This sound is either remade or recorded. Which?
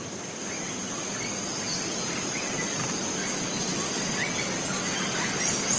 recorded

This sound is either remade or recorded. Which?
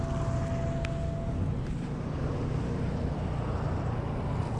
recorded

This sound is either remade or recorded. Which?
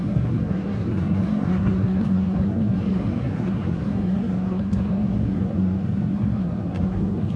remade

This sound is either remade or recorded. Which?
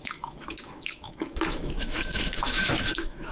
remade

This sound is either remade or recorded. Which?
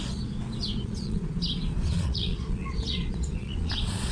remade